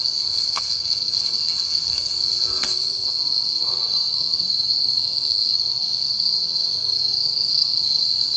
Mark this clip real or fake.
fake